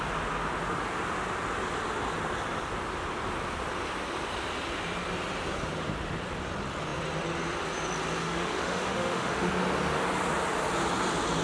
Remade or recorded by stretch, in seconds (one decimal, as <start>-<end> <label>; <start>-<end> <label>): 0.0-8.2 recorded; 8.2-9.5 remade; 9.5-11.4 recorded